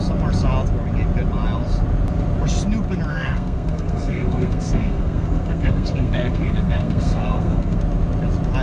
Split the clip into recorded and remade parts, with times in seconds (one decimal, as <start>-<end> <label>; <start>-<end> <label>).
0.0-3.1 recorded; 3.1-7.8 remade; 7.8-8.6 recorded